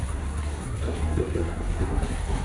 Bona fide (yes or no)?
no